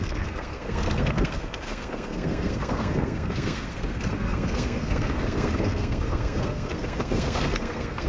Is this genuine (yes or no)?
no